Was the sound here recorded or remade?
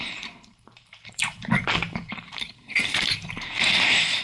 remade